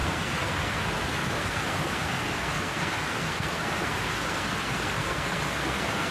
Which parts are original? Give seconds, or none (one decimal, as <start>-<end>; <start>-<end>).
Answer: none